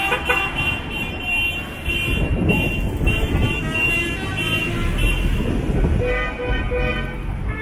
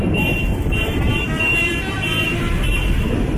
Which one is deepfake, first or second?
second